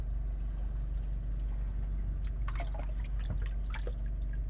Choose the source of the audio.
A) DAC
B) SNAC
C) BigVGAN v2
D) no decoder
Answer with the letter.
D